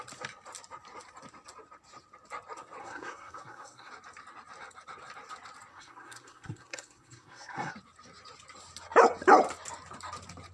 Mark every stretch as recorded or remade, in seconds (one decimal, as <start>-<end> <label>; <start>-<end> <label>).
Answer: 0.0-2.8 recorded; 2.8-3.9 remade; 3.9-5.7 recorded; 5.7-7.7 remade; 7.7-10.5 recorded